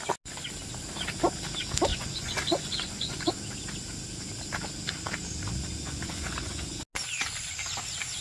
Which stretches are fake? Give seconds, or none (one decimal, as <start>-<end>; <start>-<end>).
1.9-3.3; 5.8-6.8